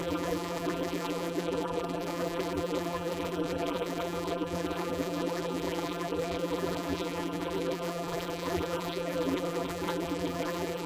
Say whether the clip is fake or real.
fake